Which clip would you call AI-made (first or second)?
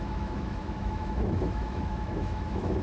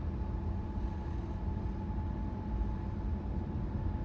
first